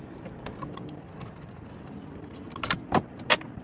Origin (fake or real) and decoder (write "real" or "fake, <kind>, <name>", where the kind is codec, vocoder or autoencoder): real